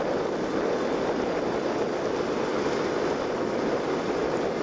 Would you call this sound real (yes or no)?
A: yes